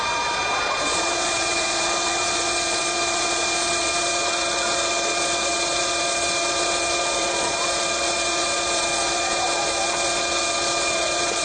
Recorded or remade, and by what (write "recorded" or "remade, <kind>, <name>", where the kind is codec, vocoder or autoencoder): remade, vocoder, Vocos